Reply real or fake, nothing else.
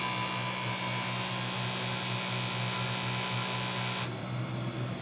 real